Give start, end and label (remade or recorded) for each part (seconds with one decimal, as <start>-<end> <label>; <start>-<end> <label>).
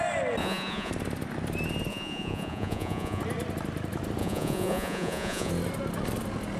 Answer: 0.0-0.4 recorded; 0.4-0.9 remade; 0.9-1.9 recorded; 1.9-3.2 remade; 3.2-4.2 recorded; 4.2-5.5 remade; 5.5-6.6 recorded